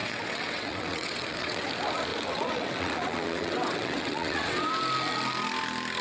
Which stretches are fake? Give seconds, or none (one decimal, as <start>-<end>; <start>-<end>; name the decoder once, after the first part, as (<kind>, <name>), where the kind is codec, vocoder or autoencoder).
0.0-1.7 (vocoder, WaveNeXt); 2.1-4.7